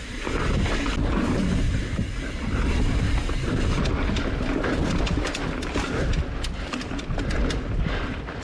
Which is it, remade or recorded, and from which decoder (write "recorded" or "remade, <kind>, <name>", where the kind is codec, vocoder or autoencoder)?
recorded